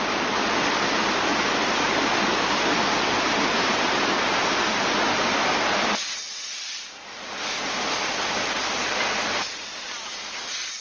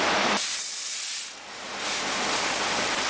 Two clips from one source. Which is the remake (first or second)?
first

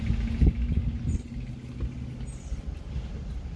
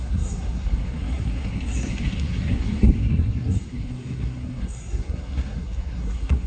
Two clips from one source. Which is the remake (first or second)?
second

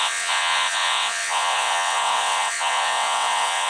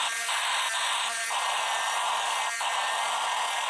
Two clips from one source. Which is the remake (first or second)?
first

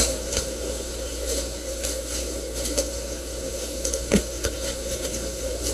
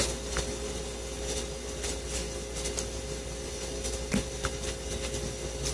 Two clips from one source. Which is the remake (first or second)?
first